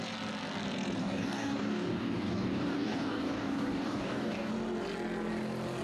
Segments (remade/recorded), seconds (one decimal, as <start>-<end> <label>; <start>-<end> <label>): 0.0-1.0 recorded; 1.0-4.5 remade; 4.5-5.8 recorded

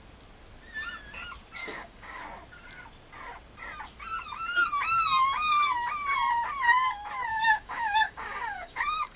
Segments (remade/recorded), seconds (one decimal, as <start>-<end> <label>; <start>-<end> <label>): 0.0-1.6 recorded; 1.6-2.2 remade; 2.2-7.3 recorded; 7.3-9.2 remade

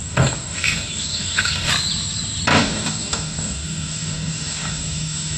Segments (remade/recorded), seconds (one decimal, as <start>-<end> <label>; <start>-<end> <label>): 0.0-1.7 remade; 1.7-2.5 recorded; 2.5-5.4 remade

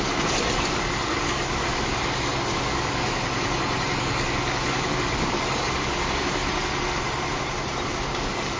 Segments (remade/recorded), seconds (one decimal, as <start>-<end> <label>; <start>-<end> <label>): 0.0-3.2 remade; 3.2-4.0 recorded; 4.0-6.4 remade; 6.4-8.1 recorded; 8.1-8.6 remade